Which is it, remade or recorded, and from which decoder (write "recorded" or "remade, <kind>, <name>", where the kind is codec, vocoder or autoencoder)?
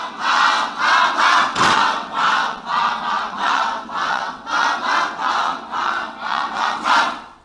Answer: remade, vocoder, WaveNeXt